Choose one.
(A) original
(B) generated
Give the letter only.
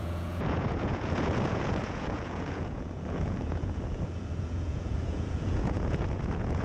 B